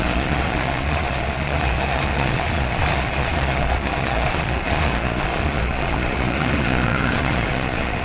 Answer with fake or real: fake